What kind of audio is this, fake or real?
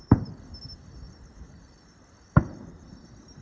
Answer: real